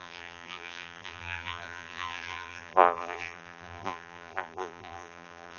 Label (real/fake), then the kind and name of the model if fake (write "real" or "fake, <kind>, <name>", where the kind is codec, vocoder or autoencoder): fake, vocoder, BigVGAN v2